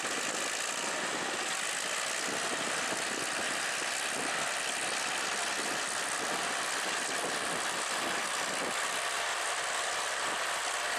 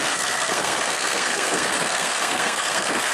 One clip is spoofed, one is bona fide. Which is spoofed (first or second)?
second